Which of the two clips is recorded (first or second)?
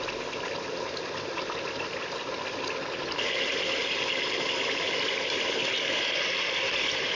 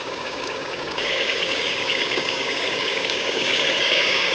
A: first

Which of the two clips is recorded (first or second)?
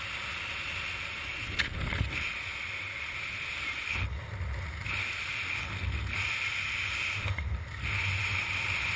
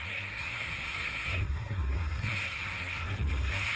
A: first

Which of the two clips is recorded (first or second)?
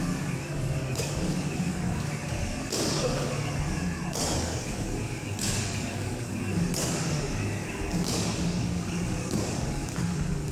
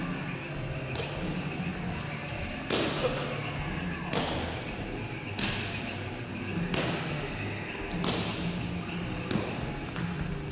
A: second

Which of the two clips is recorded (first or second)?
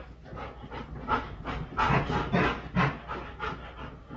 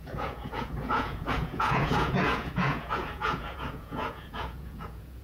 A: first